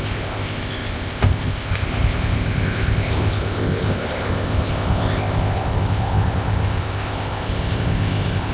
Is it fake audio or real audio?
fake